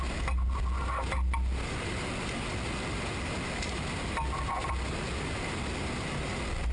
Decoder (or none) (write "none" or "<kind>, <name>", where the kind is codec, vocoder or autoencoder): none